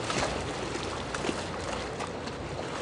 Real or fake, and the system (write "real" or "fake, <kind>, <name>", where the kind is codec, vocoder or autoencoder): real